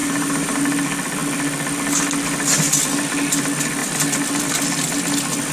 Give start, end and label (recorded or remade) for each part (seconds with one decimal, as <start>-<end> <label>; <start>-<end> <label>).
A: 0.0-0.6 remade; 0.6-5.5 recorded